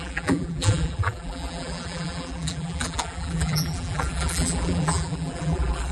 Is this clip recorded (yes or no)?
no